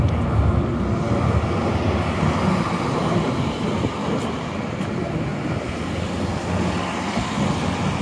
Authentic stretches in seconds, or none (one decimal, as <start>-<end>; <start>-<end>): 0.0-8.0